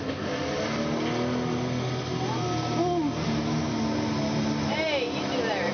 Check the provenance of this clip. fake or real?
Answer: real